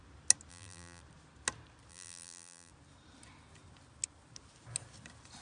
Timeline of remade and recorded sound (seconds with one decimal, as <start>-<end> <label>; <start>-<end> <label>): 0.0-0.5 recorded; 0.5-1.0 remade; 1.0-1.9 recorded; 1.9-2.7 remade; 2.7-5.4 recorded